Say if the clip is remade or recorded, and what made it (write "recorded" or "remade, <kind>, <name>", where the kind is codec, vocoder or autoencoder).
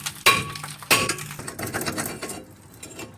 recorded